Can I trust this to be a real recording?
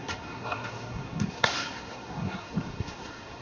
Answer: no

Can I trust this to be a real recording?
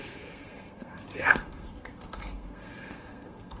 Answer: no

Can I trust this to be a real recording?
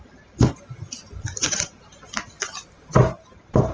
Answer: yes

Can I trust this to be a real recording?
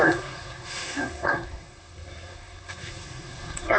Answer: no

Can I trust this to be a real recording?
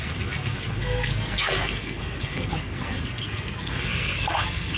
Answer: no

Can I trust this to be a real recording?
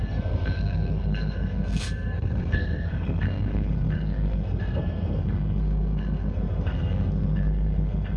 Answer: no